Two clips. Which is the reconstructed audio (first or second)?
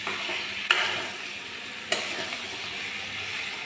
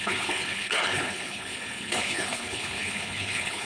second